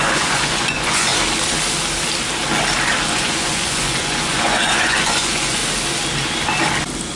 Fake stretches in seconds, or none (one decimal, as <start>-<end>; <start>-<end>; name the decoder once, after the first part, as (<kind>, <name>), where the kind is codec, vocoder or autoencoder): 0.0-1.1 (vocoder, Vocos); 3.1-5.6